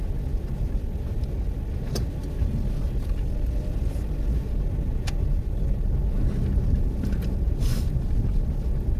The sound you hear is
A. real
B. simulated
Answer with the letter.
A